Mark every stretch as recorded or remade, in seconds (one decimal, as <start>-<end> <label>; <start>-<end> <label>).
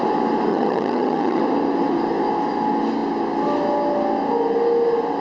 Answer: 0.0-0.5 recorded; 0.5-1.4 remade; 1.4-5.2 recorded